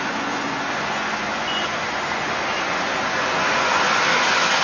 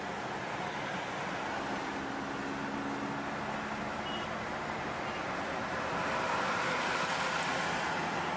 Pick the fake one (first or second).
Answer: first